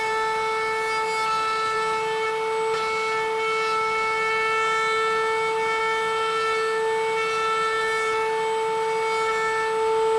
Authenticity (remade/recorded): recorded